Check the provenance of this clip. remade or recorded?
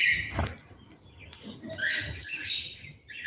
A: recorded